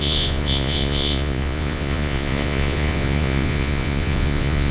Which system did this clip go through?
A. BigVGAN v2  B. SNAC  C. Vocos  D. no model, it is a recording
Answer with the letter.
C